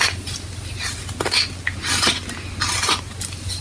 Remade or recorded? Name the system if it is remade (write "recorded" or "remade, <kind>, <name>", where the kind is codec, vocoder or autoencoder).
recorded